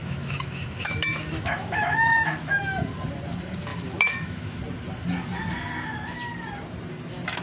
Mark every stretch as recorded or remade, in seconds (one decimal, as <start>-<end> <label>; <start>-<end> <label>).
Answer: 0.0-2.8 remade; 2.8-3.7 recorded; 3.7-4.6 remade; 4.6-7.4 recorded